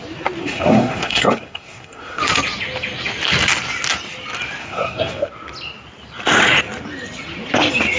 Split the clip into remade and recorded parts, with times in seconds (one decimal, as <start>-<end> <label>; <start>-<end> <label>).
0.0-0.4 recorded; 0.4-2.2 remade; 2.2-4.6 recorded; 4.6-5.3 remade; 5.3-8.0 recorded